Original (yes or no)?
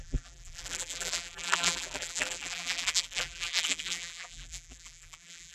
no